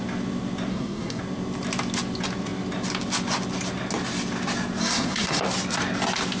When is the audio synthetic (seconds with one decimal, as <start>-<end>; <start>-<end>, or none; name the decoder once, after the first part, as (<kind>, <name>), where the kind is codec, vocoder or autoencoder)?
0.7-1.2 (codec, SNAC); 4.8-5.4